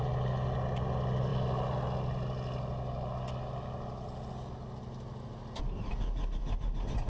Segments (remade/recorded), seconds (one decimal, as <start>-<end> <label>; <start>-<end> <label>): 0.0-7.1 recorded